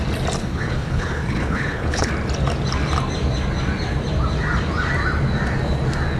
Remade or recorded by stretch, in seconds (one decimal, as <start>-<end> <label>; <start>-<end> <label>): 0.0-0.4 recorded; 0.4-2.1 remade; 2.1-6.2 recorded

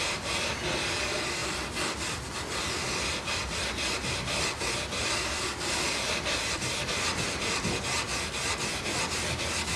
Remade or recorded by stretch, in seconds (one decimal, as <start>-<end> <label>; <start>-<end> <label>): 0.0-9.8 recorded

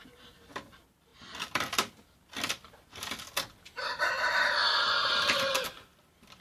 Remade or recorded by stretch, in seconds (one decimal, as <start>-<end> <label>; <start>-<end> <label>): 0.0-6.4 recorded

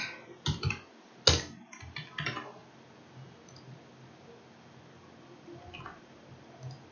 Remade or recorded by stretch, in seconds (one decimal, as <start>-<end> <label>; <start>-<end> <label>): 0.0-6.9 recorded

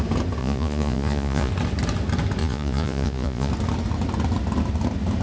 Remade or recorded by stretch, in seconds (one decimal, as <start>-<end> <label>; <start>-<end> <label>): 0.0-0.4 recorded; 0.4-1.5 remade; 1.5-2.4 recorded; 2.4-3.5 remade; 3.5-5.2 recorded

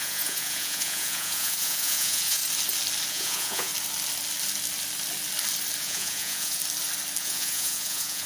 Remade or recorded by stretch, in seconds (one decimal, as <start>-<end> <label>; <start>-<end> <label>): 0.0-2.4 remade; 2.4-3.1 recorded; 3.1-3.7 remade; 3.7-5.8 recorded; 5.8-6.6 remade; 6.6-7.2 recorded; 7.2-8.3 remade